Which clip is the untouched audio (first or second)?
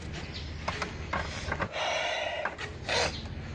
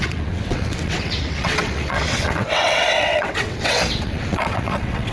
first